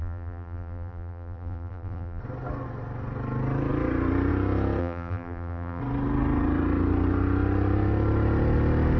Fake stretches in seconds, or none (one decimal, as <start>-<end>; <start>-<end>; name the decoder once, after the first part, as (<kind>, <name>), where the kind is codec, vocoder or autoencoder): 0.0-2.2 (vocoder, BigVGAN v2); 4.8-5.8